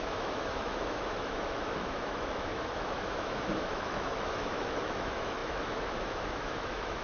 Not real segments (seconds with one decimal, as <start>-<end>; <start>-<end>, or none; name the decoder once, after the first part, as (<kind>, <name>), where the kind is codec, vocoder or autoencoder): 0.0-7.0 (autoencoder, DAC-VAE)